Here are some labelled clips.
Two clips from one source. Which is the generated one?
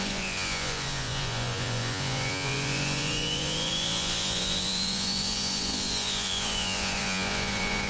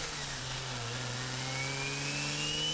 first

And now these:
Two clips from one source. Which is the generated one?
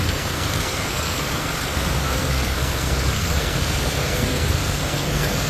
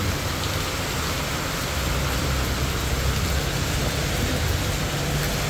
first